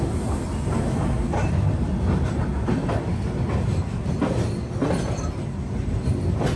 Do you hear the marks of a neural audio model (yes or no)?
no